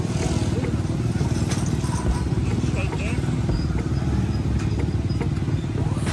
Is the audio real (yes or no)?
yes